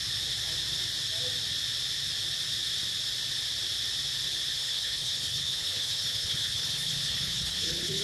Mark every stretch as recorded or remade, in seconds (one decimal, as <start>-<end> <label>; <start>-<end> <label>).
0.0-4.6 recorded; 4.6-8.0 remade